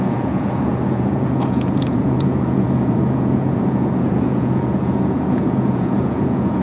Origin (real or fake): fake